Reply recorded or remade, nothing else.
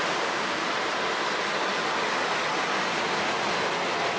recorded